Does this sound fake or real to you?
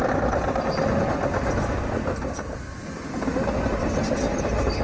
real